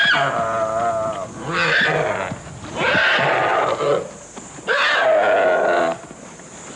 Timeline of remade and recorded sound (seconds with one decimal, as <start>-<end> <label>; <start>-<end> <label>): 0.0-6.8 recorded